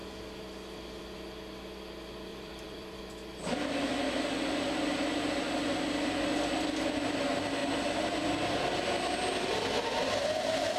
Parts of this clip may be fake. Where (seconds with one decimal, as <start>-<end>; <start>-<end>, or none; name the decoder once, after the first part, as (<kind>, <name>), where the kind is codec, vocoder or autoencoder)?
2.3-3.0 (vocoder, BigVGAN v2)